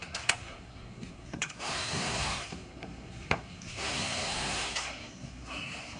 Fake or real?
fake